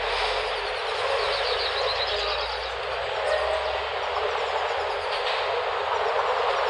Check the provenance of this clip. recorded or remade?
recorded